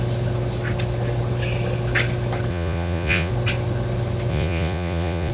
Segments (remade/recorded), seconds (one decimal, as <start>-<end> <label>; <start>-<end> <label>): 0.0-2.5 recorded; 2.5-3.3 remade; 3.3-4.3 recorded; 4.3-5.3 remade